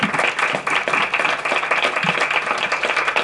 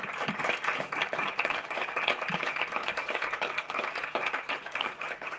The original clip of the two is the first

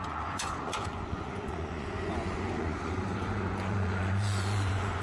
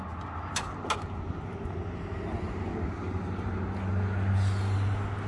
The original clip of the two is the second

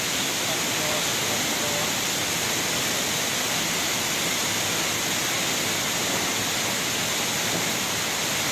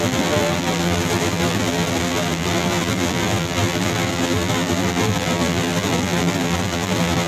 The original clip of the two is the first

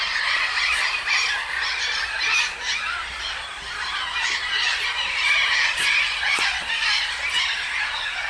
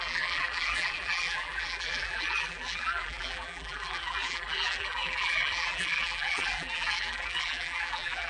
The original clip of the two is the first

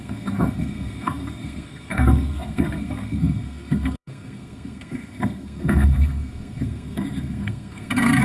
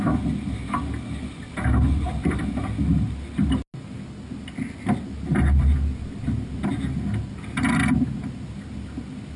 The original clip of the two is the second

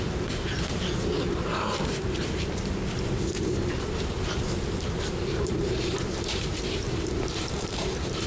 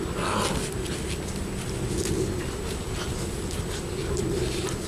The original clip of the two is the second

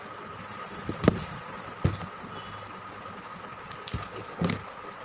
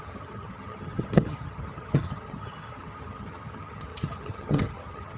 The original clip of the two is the first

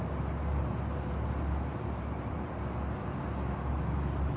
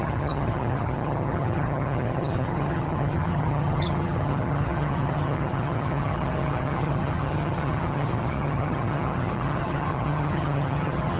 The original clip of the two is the first